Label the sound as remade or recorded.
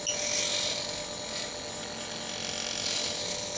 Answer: recorded